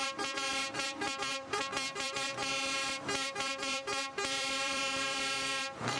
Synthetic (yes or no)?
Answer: yes